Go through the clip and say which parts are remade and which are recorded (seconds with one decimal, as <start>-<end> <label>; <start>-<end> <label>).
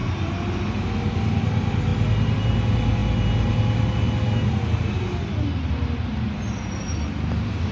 0.0-7.7 recorded